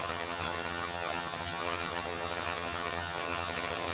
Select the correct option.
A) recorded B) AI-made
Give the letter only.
B